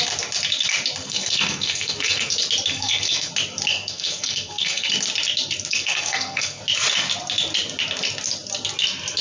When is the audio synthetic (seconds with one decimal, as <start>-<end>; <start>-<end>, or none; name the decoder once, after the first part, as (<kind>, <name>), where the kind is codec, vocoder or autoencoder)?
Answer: 1.0-2.3 (codec, SNAC); 2.7-3.3; 3.7-4.9; 5.7-6.6